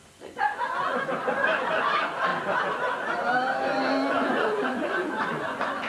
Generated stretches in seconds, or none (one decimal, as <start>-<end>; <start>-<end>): 0.0-2.3; 4.1-5.9